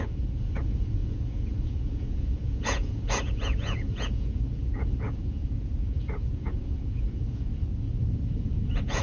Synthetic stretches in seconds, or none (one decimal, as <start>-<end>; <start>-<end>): 0.0-7.5; 8.0-9.0